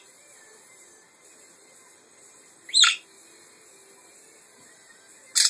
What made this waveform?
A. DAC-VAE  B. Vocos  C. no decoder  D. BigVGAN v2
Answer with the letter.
C